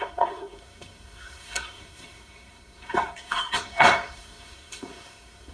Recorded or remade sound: remade